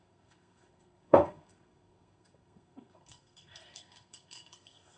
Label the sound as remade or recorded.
remade